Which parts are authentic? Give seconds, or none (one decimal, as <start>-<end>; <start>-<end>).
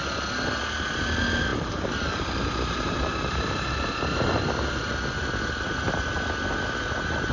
0.0-7.3